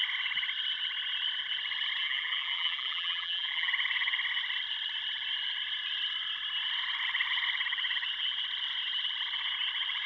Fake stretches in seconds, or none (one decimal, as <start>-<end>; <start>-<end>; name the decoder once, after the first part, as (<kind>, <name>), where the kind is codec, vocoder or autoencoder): 2.0-3.7 (vocoder, BigVGAN v2)